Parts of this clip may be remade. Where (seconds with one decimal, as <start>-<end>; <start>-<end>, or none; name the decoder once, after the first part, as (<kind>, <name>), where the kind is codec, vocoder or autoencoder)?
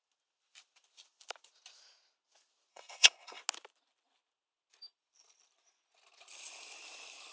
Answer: 2.7-3.4 (codec, SNAC)